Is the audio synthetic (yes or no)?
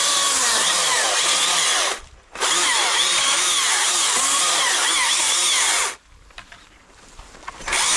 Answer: yes